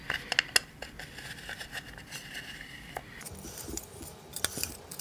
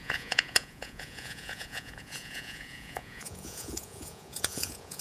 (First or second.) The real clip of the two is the first